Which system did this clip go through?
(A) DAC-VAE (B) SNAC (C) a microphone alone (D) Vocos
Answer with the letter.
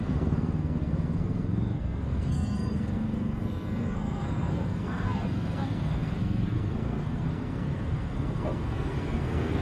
B